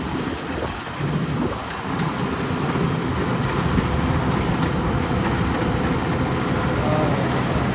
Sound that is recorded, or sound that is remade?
recorded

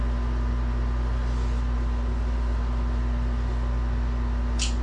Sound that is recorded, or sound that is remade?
recorded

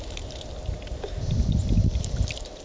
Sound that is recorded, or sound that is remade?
remade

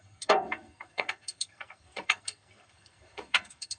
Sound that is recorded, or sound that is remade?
remade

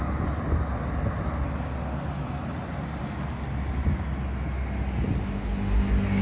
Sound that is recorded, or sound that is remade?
recorded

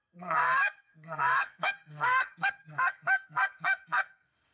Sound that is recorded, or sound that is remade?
remade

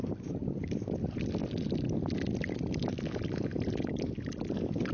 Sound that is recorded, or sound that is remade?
recorded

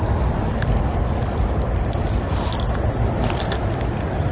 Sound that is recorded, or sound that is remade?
remade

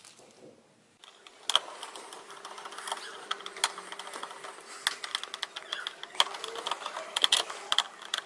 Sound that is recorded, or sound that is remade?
recorded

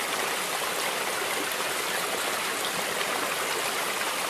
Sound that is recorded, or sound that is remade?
recorded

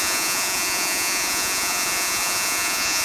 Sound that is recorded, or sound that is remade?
remade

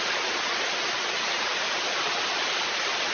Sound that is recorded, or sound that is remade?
recorded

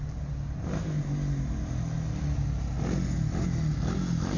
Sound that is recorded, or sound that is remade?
recorded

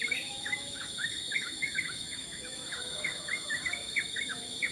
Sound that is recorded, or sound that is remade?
remade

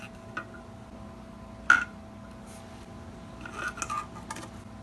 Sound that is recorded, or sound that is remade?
recorded